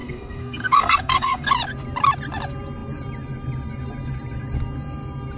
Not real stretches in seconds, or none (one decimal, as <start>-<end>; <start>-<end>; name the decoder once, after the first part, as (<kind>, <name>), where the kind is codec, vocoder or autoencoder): 0.0-1.5 (codec, SNAC)